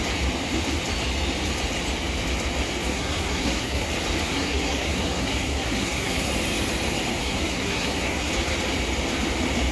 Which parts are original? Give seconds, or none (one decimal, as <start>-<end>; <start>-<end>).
0.0-2.9; 3.9-4.3; 6.3-7.2; 8.3-9.7